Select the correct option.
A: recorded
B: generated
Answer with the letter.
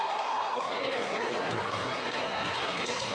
B